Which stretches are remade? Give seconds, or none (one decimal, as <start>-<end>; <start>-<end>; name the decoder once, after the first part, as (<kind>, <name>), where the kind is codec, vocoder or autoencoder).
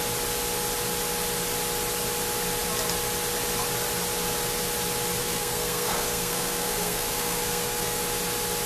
5.2-8.0 (codec, SNAC)